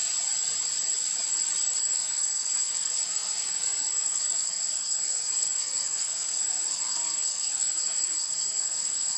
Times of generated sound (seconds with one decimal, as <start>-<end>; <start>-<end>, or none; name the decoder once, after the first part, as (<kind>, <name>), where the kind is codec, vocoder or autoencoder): 1.8-9.2 (codec, SNAC)